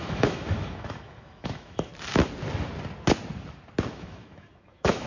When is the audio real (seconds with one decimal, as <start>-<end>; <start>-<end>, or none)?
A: 1.9-3.9

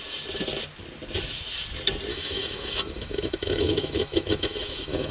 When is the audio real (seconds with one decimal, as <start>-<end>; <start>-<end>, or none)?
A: 0.0-2.1

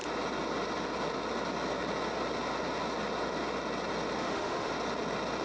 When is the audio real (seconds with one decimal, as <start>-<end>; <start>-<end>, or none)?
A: 0.0-4.2; 4.7-5.4

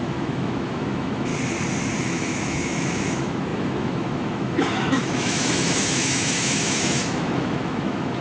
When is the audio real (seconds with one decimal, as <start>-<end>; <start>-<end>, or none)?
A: 1.3-2.0

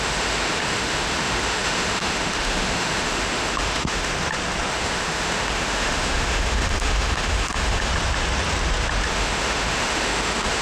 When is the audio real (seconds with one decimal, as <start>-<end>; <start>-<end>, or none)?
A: 4.1-4.7; 7.9-9.1

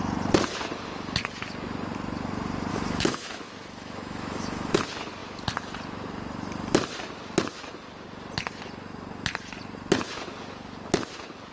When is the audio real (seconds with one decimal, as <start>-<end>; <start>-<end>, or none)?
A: 0.0-2.7; 4.8-11.5